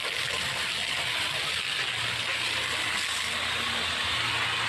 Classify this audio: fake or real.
real